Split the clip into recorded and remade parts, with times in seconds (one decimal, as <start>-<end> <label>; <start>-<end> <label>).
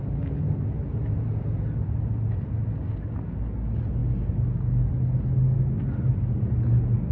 0.0-7.1 recorded